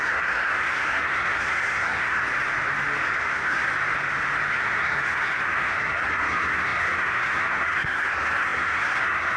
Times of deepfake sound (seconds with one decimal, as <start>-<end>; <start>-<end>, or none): 0.0-2.2; 3.2-3.7; 4.5-9.4